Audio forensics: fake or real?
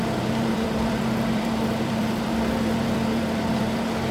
fake